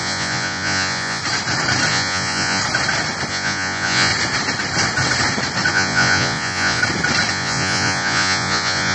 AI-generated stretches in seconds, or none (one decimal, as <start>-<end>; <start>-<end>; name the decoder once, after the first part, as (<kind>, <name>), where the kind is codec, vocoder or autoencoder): 0.0-1.2 (vocoder, Vocos); 1.9-2.6; 3.3-4.1; 5.7-6.8; 7.3-8.9